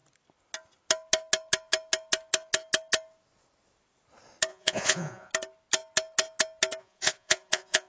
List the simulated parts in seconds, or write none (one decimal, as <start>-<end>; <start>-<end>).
4.5-5.3; 6.8-7.9